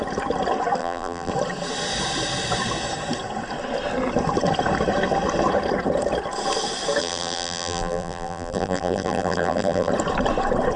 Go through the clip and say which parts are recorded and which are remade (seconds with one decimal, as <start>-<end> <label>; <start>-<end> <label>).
0.0-0.8 recorded; 0.8-1.3 remade; 1.3-7.0 recorded; 7.0-9.9 remade; 9.9-10.8 recorded